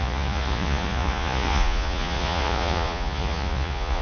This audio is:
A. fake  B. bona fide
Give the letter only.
A